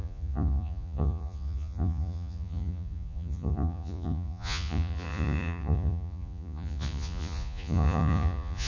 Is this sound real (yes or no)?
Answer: no